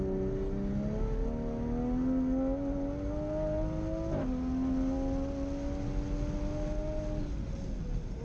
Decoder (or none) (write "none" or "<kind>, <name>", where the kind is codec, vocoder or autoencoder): none